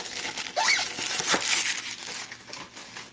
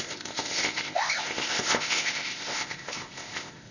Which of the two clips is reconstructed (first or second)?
second